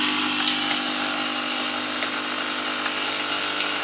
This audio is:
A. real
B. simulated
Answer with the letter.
A